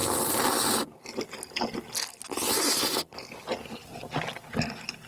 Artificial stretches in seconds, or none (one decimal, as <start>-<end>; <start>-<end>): none